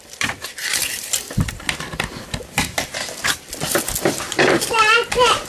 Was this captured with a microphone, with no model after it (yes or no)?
no